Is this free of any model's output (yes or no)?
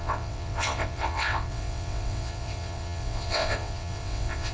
no